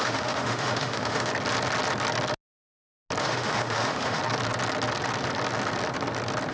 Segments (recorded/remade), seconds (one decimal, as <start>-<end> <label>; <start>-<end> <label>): 0.0-1.3 remade; 1.3-3.2 recorded; 3.2-4.2 remade; 4.2-6.5 recorded